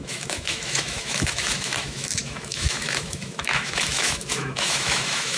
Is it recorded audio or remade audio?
remade